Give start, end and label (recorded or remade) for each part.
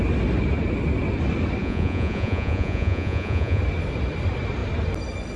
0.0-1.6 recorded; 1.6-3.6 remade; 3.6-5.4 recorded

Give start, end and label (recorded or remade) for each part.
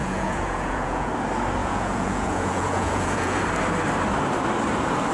0.0-1.1 remade; 1.1-1.6 recorded; 1.6-3.4 remade; 3.4-5.1 recorded